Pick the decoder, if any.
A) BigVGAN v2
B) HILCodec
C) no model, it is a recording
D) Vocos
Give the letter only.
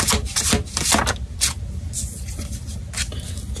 C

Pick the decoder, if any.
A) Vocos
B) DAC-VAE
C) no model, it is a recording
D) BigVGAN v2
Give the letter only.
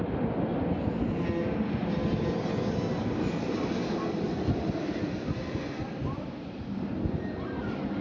C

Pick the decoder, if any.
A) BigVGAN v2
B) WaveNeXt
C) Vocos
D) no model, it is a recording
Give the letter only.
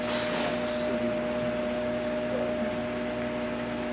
D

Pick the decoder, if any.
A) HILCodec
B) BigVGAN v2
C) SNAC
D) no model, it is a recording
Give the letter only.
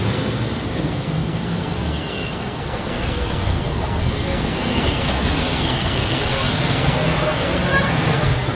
C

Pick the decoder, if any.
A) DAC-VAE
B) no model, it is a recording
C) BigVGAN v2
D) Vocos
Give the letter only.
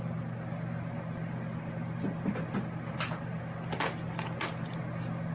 B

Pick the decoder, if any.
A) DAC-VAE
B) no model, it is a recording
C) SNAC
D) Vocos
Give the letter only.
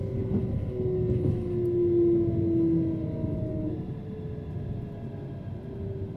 B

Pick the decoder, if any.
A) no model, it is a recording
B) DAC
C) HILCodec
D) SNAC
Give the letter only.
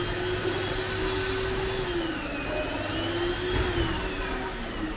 A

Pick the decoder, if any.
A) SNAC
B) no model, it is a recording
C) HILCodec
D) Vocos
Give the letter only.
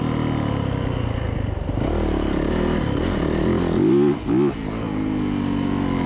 B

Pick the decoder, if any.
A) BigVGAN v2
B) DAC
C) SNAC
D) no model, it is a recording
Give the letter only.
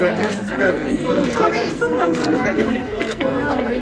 C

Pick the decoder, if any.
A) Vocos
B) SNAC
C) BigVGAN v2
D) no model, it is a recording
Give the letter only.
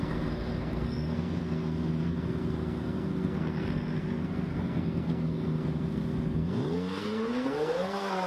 B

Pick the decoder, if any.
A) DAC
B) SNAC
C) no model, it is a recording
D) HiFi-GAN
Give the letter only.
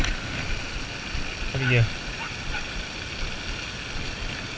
C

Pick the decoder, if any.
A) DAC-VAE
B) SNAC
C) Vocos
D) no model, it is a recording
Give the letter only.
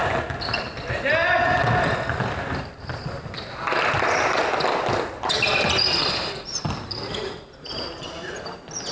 D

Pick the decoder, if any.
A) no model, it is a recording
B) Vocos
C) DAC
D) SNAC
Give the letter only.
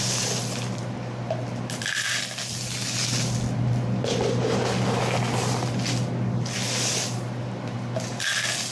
A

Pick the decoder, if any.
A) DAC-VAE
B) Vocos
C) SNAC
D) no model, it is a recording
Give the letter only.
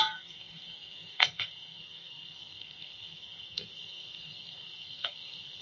C